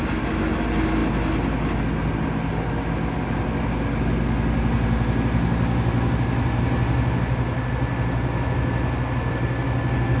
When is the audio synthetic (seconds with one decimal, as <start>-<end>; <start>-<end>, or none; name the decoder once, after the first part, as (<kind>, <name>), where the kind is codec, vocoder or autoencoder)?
none